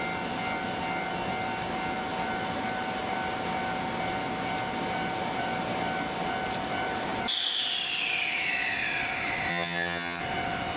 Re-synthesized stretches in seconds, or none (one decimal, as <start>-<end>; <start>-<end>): 9.5-10.2